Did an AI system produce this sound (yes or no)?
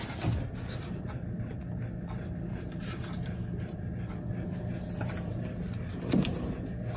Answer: no